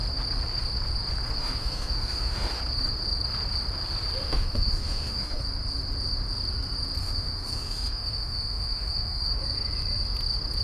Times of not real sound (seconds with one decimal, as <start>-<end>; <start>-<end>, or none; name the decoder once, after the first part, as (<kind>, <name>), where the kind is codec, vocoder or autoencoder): 1.4-2.6 (autoencoder, DAC-VAE); 4.2-5.4; 7.0-9.4